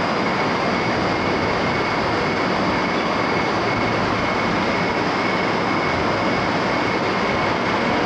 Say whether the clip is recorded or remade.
recorded